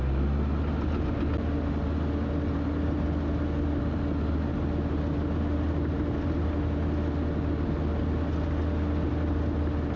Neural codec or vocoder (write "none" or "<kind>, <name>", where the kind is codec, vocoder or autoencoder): none